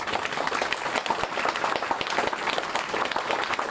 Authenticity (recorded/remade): recorded